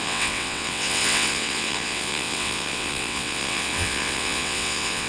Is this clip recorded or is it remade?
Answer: remade